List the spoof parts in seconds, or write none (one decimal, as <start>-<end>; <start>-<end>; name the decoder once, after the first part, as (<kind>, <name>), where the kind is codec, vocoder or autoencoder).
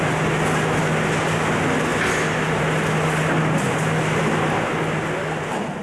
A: none